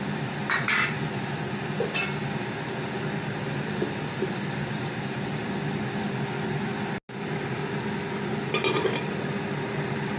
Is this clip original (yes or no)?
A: yes